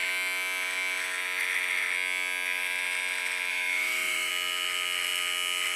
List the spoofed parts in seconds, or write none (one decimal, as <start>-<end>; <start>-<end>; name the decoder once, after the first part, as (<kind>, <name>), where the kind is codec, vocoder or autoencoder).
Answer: 3.5-4.3 (autoencoder, DAC-VAE)